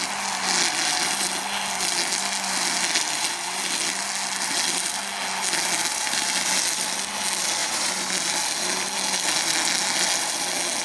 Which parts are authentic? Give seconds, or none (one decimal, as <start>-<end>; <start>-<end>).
0.0-7.6; 8.1-10.8